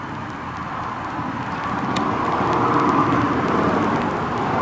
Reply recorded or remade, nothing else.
recorded